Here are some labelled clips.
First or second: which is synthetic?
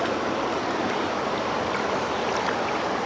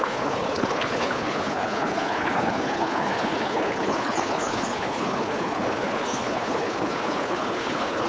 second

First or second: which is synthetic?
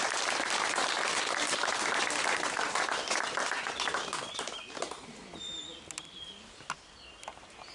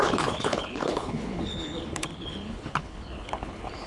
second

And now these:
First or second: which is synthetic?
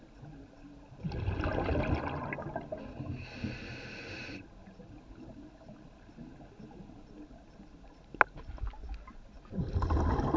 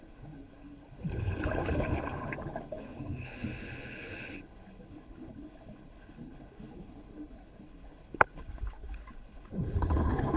second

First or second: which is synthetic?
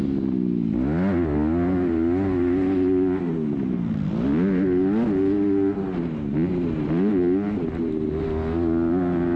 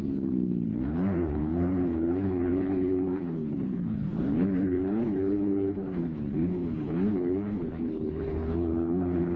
second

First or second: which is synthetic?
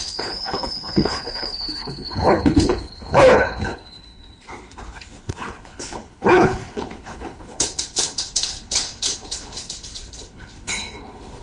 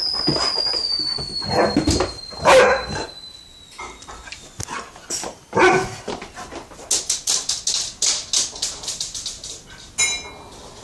first